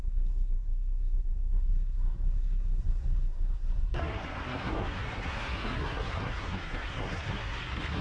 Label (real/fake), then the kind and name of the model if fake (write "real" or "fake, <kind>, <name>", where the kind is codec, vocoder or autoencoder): fake, codec, SNAC